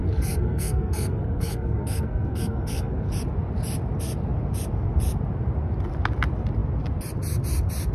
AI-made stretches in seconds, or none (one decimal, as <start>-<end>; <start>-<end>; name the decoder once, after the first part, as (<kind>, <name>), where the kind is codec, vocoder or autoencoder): 0.0-3.1 (codec, SNAC)